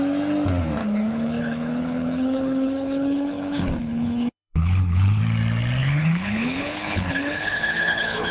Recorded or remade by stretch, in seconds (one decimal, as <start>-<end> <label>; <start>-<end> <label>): 0.0-0.8 recorded; 0.8-5.2 remade; 5.2-5.8 recorded; 5.8-8.3 remade